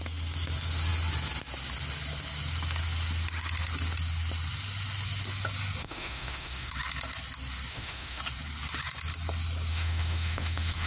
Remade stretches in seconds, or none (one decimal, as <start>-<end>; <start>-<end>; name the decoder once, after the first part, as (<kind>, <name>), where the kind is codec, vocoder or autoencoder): 5.8-6.7 (autoencoder, DAC-VAE); 7.7-8.2; 9.7-10.9